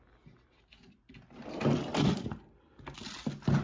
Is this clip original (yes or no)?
yes